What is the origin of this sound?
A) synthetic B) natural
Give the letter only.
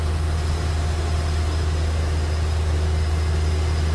B